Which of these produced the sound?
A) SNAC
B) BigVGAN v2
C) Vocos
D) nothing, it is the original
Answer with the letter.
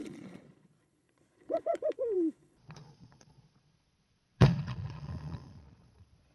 C